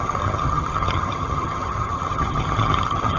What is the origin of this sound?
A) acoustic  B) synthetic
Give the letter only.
B